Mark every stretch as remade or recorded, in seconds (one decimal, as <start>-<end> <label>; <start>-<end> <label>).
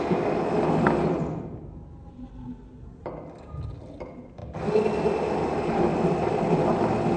0.0-7.2 recorded